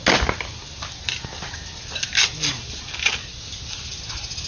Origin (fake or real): real